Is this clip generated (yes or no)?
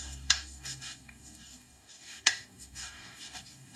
yes